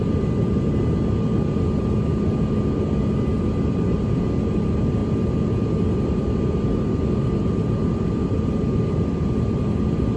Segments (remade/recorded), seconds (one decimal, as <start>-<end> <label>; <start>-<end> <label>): 0.0-10.2 recorded